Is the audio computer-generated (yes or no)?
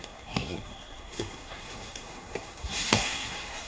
yes